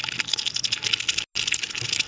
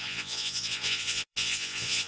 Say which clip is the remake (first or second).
second